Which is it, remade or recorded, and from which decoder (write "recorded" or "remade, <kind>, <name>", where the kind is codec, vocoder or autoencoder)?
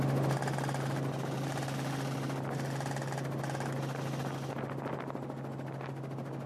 recorded